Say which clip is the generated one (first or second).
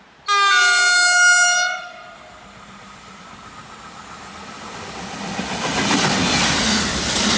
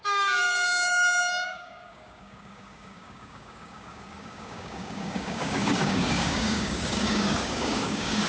second